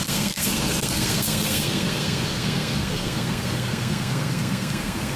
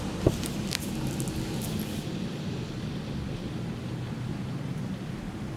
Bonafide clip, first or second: second